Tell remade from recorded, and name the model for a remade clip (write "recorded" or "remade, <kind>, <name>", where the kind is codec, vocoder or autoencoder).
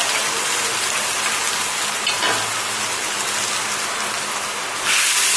recorded